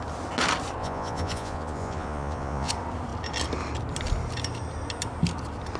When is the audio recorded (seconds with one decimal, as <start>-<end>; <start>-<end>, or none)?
0.0-0.8; 2.7-5.8